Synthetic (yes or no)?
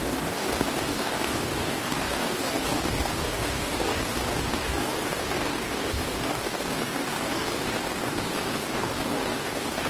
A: yes